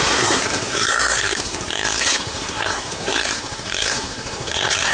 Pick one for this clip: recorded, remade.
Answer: remade